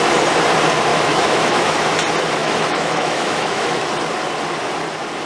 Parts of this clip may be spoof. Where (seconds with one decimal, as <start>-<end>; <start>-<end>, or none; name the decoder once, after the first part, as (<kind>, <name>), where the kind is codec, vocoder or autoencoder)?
0.9-1.8 (autoencoder, DAC-VAE); 2.4-3.9

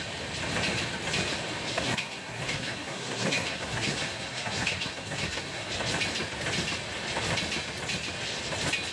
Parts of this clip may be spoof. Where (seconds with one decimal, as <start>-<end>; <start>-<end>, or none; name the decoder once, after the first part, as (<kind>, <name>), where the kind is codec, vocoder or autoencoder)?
1.7-5.7 (codec, SNAC)

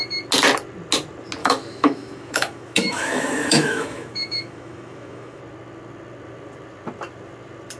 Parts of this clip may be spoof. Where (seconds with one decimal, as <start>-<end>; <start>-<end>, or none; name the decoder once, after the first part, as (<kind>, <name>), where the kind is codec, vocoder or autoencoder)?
1.4-5.4 (autoencoder, DAC-VAE)

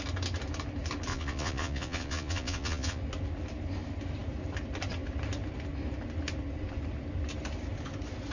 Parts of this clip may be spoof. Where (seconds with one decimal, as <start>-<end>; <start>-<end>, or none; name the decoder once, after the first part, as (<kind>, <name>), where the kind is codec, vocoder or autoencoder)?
1.1-3.0 (vocoder, Vocos)

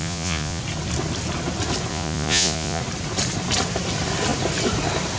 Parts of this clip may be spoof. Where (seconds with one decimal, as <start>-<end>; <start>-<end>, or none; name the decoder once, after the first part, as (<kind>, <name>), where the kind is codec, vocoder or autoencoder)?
0.0-0.6 (vocoder, Vocos); 1.9-2.8

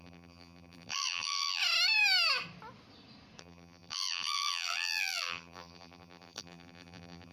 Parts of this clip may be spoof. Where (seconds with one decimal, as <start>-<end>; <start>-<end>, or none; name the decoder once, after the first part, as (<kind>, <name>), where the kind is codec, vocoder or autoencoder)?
0.0-1.6 (vocoder, BigVGAN v2); 3.4-7.3

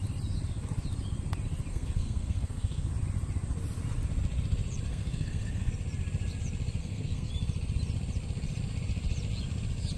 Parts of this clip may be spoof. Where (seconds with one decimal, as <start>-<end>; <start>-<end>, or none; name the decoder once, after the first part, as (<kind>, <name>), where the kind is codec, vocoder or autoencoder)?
1.7-2.9 (codec, SNAC); 4.9-5.7; 6.8-7.3

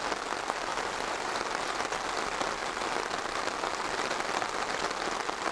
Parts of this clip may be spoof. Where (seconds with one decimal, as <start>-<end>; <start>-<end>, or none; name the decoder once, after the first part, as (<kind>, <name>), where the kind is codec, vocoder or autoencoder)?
0.7-1.8 (vocoder, BigVGAN v2)